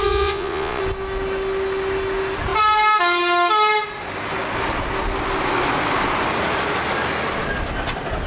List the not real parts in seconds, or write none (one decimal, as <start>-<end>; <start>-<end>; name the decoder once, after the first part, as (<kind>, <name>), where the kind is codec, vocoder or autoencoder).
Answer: 0.0-0.8 (vocoder, Vocos)